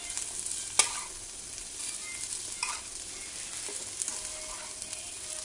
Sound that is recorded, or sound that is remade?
recorded